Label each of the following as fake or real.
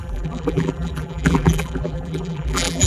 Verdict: fake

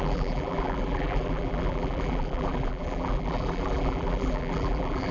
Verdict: fake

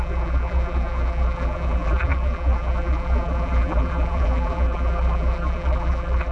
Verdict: fake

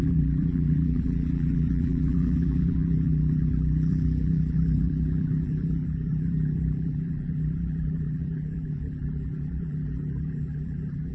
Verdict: fake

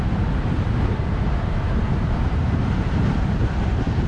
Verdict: fake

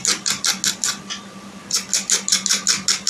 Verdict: real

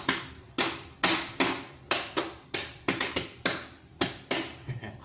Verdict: real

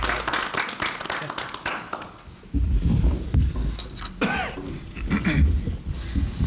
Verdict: real